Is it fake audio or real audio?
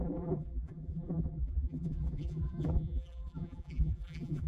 fake